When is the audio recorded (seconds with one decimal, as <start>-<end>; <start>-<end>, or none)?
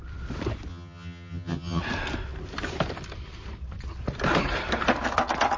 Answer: 0.0-0.7; 1.8-5.6